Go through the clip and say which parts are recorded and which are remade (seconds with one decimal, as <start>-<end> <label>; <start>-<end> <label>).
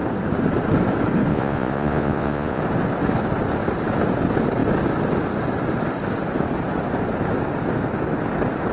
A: 0.0-1.3 recorded; 1.3-2.6 remade; 2.6-8.7 recorded